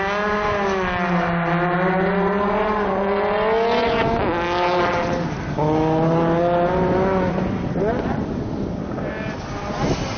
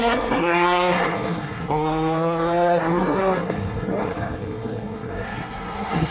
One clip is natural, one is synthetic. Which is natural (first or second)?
first